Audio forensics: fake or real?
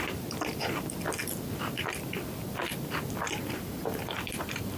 real